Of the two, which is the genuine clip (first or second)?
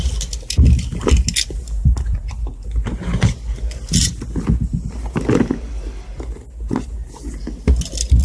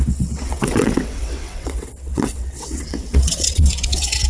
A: first